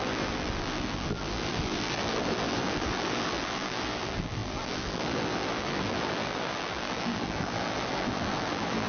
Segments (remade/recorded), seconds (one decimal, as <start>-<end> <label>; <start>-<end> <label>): 0.0-8.9 remade